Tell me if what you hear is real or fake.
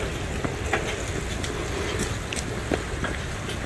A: real